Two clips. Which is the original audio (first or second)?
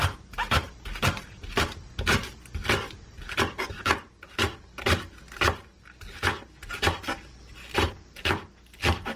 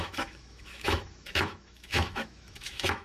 first